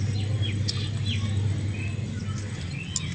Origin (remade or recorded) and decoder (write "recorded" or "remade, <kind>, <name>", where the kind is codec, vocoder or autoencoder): recorded